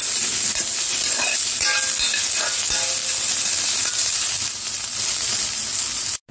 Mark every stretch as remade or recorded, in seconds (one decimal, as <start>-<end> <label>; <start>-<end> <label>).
0.0-3.0 recorded; 3.0-5.5 remade; 5.5-6.3 recorded